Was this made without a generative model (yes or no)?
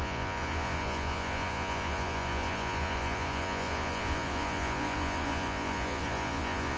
no